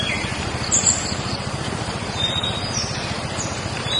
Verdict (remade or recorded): remade